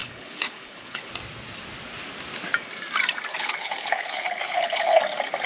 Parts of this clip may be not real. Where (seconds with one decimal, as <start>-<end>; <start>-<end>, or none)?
0.0-1.1; 3.3-5.0